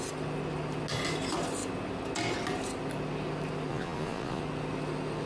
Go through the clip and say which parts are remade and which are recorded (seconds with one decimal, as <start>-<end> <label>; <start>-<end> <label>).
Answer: 0.0-3.7 recorded; 3.7-4.4 remade; 4.4-5.3 recorded